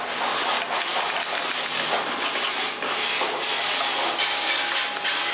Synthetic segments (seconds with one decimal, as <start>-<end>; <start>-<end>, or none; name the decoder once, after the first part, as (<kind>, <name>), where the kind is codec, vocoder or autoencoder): none